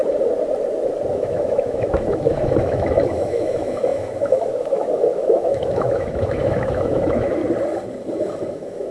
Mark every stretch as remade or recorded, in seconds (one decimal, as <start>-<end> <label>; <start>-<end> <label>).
0.0-1.1 recorded; 1.1-7.4 remade; 7.4-8.5 recorded; 8.5-8.9 remade